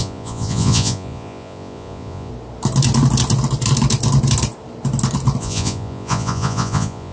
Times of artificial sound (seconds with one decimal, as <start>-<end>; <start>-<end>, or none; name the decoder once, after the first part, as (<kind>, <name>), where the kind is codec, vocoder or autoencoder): 0.0-2.3 (vocoder, Vocos); 5.4-7.1